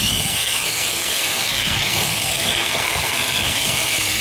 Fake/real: fake